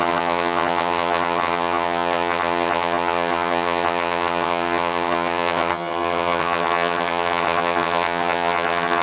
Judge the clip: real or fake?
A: fake